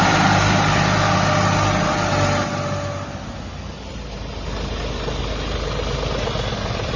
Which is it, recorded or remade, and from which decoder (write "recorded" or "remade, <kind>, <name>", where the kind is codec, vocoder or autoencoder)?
recorded